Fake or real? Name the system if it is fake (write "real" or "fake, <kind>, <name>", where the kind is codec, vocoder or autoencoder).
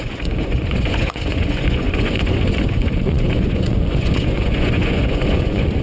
fake, vocoder, Vocos